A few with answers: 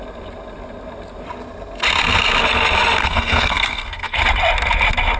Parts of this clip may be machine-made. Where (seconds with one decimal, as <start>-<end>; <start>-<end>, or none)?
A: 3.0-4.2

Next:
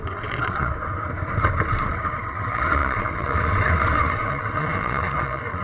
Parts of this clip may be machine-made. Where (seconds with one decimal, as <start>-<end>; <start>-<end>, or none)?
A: 0.0-0.7; 2.2-5.6

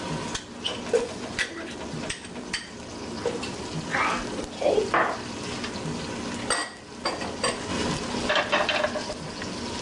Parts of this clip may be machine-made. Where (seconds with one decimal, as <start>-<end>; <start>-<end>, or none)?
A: 0.7-3.7; 7.7-8.3

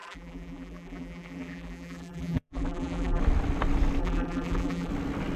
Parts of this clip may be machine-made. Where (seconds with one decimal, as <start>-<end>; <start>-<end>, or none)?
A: 0.0-3.2; 4.0-4.9

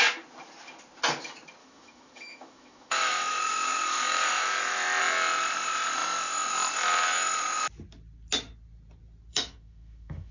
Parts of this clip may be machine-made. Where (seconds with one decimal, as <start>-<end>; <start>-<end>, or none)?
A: 1.6-5.0; 9.3-10.3

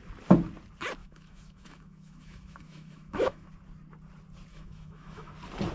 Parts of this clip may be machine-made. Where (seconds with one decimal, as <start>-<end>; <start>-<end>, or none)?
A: 1.0-3.5; 4.5-5.3